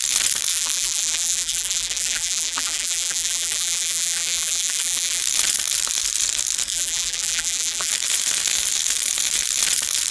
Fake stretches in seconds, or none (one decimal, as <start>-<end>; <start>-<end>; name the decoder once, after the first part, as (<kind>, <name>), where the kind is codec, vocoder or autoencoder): 0.5-5.2 (vocoder, BigVGAN v2); 6.7-7.9